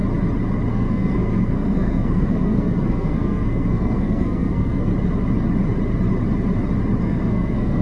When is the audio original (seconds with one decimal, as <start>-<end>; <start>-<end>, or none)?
0.0-0.7; 4.9-7.0